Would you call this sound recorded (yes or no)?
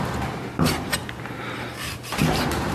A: yes